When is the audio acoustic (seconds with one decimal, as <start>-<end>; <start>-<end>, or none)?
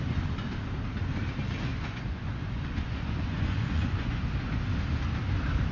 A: 0.0-1.7; 4.2-5.7